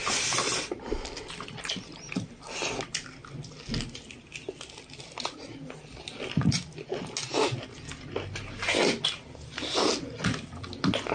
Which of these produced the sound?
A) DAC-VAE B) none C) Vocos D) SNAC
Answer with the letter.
B